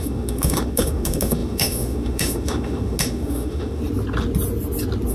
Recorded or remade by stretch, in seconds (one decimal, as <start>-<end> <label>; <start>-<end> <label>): 0.0-3.8 remade; 3.8-5.1 recorded